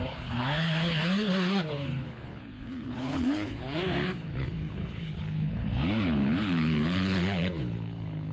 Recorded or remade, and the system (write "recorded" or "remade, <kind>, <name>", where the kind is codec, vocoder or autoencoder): remade, codec, HILCodec